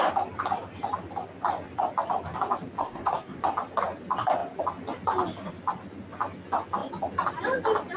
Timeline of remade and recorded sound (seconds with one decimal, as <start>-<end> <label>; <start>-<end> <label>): 0.0-2.8 recorded; 2.8-3.4 remade; 3.4-8.0 recorded